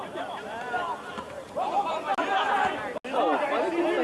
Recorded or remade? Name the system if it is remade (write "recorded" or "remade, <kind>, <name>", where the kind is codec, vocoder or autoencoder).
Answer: recorded